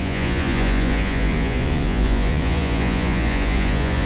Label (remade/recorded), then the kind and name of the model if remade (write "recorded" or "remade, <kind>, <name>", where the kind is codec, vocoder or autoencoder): remade, vocoder, Vocos